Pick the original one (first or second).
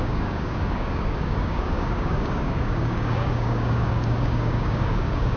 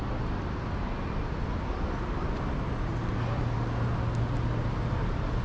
second